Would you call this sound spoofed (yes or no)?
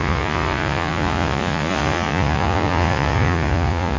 yes